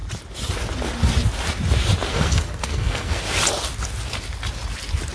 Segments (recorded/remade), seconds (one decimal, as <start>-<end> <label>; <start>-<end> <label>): 0.0-2.1 recorded; 2.1-3.2 remade; 3.2-5.1 recorded